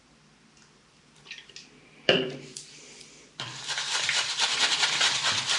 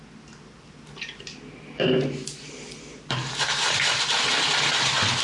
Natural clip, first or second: second